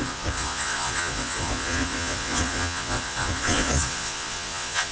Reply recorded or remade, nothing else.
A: remade